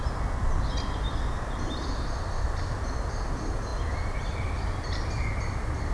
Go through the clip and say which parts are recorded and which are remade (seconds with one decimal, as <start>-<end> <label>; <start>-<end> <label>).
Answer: 0.0-5.9 recorded

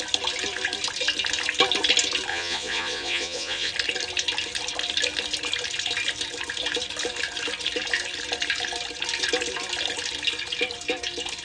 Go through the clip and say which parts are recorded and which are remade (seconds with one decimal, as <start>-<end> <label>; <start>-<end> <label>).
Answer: 0.0-2.3 recorded; 2.3-3.7 remade; 3.7-11.4 recorded

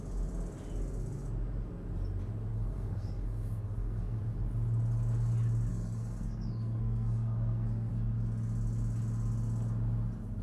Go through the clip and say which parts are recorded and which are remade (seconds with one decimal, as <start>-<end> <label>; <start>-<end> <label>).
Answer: 0.0-2.5 recorded; 2.5-4.2 remade; 4.2-5.7 recorded; 5.7-7.9 remade; 7.9-10.4 recorded

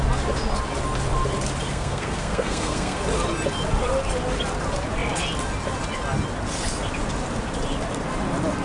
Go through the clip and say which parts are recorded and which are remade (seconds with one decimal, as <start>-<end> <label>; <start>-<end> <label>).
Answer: 0.0-1.7 recorded; 1.7-3.0 remade; 3.0-8.6 recorded

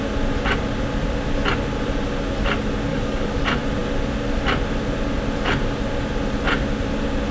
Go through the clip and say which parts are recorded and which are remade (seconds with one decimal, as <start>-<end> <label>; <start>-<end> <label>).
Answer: 0.0-2.9 recorded; 2.9-3.4 remade; 3.4-7.3 recorded

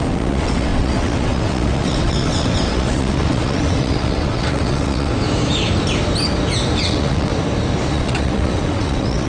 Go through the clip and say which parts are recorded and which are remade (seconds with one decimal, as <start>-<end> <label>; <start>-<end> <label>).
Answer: 0.0-5.1 remade; 5.1-6.8 recorded; 6.8-7.3 remade; 7.3-7.9 recorded; 7.9-9.3 remade